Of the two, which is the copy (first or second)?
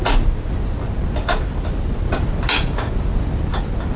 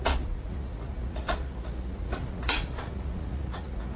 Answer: second